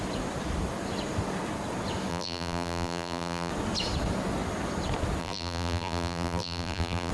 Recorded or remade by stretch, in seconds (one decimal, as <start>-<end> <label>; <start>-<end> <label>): 0.0-2.1 recorded; 2.1-3.5 remade; 3.5-5.2 recorded; 5.2-7.1 remade